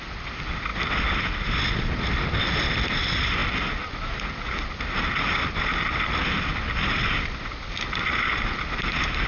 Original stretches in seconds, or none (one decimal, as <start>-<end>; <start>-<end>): 0.0-9.3